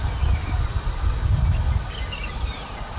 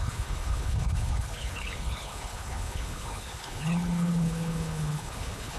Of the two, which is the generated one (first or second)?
second